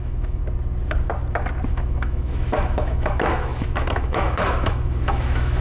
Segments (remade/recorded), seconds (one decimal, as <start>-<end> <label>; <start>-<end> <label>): 0.0-0.4 remade; 0.4-1.7 recorded; 1.7-5.6 remade